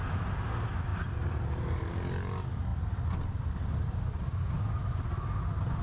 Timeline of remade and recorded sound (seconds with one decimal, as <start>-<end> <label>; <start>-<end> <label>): 0.0-0.9 recorded; 0.9-1.9 remade; 1.9-5.8 recorded